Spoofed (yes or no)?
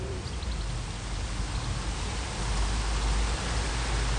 no